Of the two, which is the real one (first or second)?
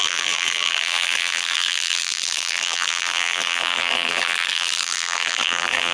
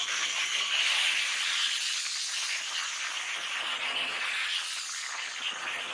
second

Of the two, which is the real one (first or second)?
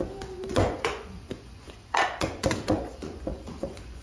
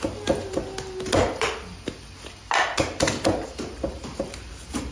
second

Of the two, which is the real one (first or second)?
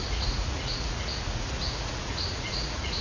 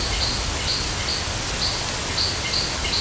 second